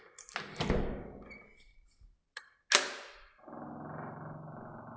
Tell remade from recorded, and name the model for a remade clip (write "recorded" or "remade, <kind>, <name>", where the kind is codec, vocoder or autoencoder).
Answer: recorded